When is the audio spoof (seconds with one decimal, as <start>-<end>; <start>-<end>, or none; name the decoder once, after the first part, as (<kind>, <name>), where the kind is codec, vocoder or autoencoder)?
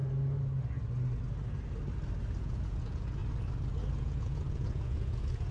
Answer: 2.4-3.2 (vocoder, Vocos); 4.0-5.5